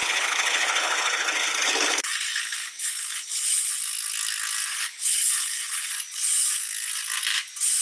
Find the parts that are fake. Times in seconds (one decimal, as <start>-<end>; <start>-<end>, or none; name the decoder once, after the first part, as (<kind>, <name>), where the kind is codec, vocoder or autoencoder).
0.0-3.7 (codec, HILCodec); 4.7-5.9